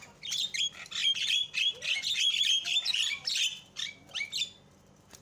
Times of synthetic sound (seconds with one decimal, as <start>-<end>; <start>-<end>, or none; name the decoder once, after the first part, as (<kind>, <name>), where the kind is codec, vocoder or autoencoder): none